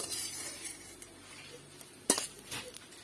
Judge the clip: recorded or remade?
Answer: recorded